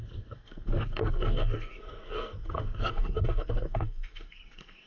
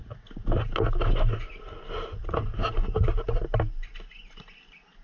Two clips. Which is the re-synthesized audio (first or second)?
first